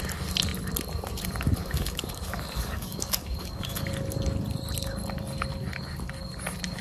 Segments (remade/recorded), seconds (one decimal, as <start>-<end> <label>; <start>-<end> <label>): 0.0-1.6 recorded; 1.6-3.9 remade; 3.9-6.8 recorded